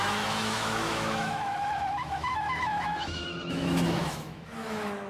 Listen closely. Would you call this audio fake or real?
fake